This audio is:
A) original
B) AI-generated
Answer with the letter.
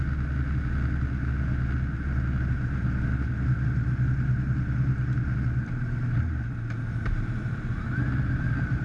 A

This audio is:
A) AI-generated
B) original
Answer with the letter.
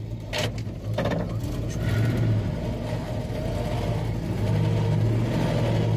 B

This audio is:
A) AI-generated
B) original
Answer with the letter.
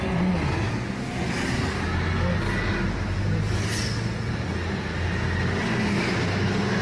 B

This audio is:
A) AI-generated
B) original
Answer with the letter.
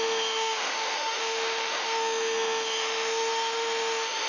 A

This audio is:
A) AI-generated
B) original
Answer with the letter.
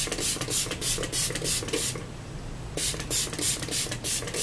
B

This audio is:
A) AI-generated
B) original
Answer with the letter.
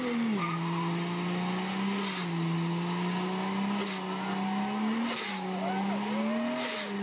B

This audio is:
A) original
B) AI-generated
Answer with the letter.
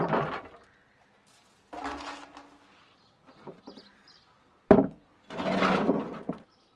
A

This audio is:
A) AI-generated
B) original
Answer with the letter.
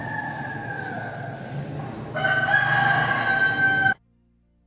B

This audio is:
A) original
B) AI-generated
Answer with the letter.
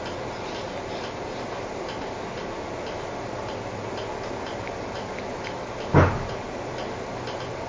A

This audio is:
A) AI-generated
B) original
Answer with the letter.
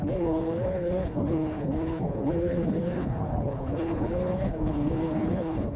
A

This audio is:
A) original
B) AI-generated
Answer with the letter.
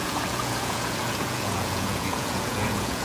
B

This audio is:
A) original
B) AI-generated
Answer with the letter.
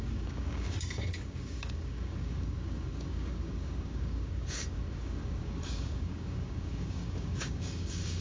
B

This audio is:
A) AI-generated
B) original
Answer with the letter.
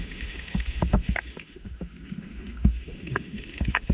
A